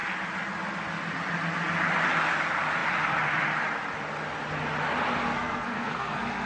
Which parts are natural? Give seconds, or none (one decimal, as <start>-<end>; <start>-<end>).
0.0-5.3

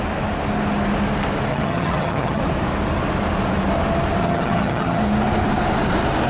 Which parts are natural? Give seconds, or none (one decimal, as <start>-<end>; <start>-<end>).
0.0-1.5; 2.4-4.2; 5.0-6.3

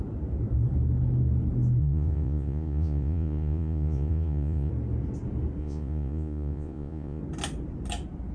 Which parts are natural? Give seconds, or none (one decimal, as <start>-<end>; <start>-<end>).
0.0-1.8; 4.7-5.6; 7.2-8.3

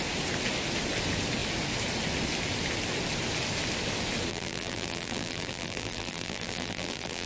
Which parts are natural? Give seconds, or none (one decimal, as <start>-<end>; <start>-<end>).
0.0-4.3